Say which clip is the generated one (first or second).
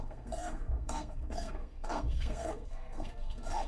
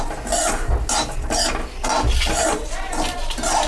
first